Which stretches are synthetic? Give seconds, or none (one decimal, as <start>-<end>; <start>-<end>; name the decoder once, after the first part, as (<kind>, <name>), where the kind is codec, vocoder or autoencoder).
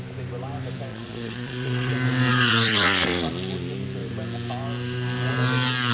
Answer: 0.9-1.9 (vocoder, Vocos); 2.3-3.3